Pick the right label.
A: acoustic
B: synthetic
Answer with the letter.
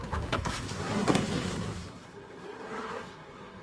B